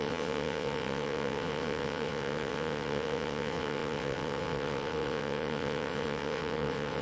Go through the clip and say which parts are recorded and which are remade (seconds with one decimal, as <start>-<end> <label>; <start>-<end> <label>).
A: 0.0-7.0 remade

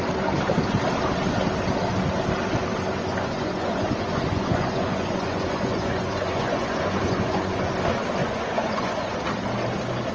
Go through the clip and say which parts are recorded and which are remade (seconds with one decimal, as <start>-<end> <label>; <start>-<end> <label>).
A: 0.0-3.0 recorded; 3.0-7.7 remade; 7.7-8.2 recorded; 8.2-9.2 remade; 9.2-10.1 recorded

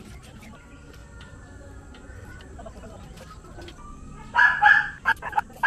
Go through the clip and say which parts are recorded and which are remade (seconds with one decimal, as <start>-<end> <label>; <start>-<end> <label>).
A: 0.0-1.0 remade; 1.0-4.4 recorded; 4.4-5.7 remade

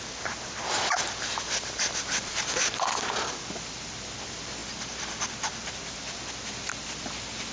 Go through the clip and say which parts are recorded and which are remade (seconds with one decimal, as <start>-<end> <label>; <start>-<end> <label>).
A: 0.0-7.5 recorded

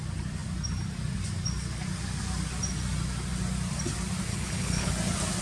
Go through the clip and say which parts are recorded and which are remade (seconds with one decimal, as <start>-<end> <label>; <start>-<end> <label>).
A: 0.0-4.3 recorded; 4.3-4.9 remade; 4.9-5.4 recorded

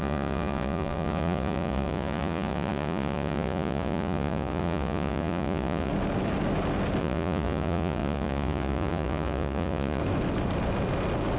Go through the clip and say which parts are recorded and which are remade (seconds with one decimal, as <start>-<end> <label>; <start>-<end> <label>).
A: 0.0-5.9 remade; 5.9-7.0 recorded; 7.0-10.0 remade; 10.0-11.4 recorded